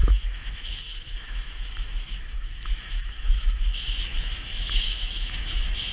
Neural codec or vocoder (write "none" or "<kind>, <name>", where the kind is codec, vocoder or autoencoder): autoencoder, DAC-VAE